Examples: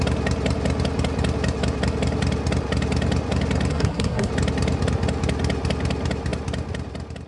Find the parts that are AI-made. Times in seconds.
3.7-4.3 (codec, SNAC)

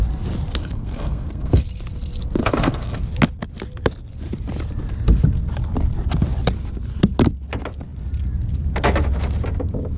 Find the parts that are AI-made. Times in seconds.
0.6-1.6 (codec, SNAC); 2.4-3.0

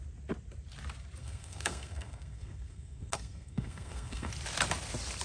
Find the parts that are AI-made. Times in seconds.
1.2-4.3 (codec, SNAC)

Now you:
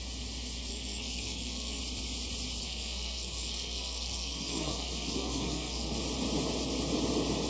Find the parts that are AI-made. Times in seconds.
0.7-1.8 (codec, SNAC); 2.6-6.0